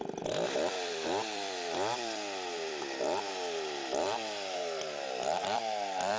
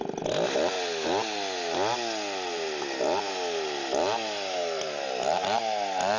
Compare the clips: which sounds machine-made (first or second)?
first